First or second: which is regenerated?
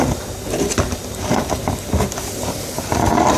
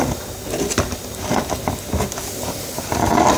first